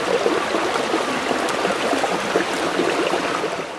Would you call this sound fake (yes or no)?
no